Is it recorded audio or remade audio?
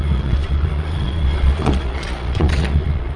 remade